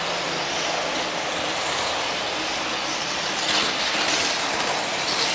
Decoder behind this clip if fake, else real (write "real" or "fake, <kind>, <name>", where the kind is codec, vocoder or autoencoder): real